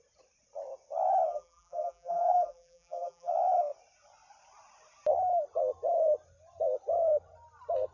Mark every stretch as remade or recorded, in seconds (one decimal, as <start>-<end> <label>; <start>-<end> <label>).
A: 0.0-1.3 recorded; 1.3-3.3 remade; 3.3-7.9 recorded